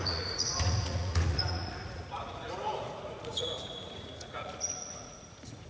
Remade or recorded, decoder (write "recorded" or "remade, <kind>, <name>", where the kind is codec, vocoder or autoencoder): remade, vocoder, Vocos